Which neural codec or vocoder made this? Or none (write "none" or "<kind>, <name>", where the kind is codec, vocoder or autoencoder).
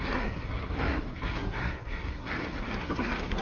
codec, SNAC